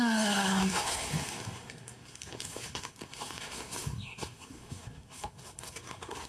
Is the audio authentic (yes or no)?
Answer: no